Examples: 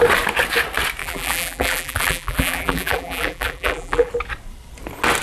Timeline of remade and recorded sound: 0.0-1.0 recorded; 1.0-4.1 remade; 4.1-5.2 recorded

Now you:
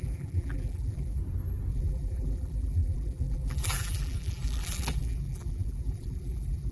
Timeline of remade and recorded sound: 0.0-1.2 remade; 1.2-1.7 recorded; 1.7-6.7 remade

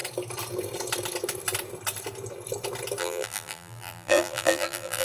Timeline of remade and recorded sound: 0.0-3.0 recorded; 3.0-5.0 remade

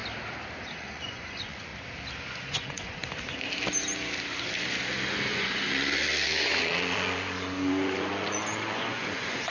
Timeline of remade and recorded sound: 0.0-0.8 recorded; 0.8-1.7 remade; 1.7-2.3 recorded; 2.3-3.0 remade; 3.0-5.1 recorded; 5.1-9.5 remade